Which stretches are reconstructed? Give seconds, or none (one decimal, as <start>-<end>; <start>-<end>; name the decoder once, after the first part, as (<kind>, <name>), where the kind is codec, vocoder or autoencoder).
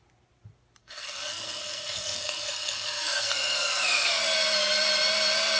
0.8-4.2 (codec, SNAC)